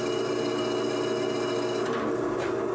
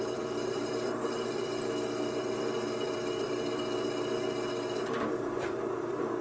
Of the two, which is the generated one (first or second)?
second